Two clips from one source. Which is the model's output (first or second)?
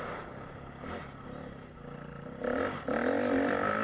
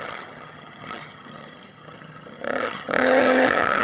second